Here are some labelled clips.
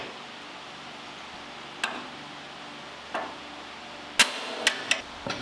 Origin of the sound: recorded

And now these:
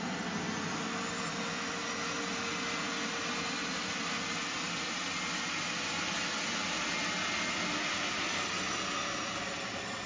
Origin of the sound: recorded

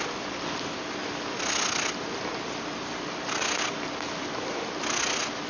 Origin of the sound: recorded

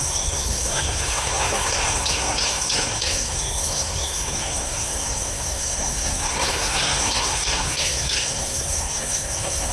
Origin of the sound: remade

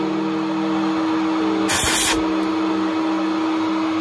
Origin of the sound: recorded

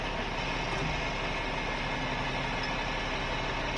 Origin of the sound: recorded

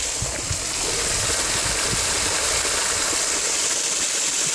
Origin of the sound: recorded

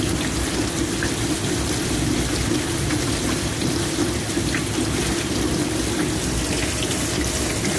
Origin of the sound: recorded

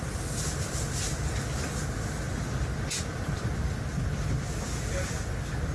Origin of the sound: recorded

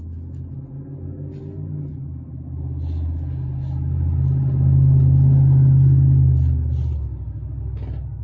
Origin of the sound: recorded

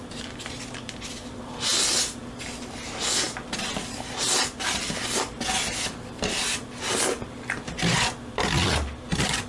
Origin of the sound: recorded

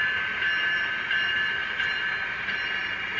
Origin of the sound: recorded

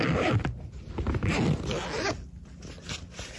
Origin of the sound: recorded